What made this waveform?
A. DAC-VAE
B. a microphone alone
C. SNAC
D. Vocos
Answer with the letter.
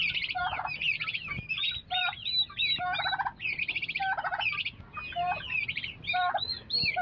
B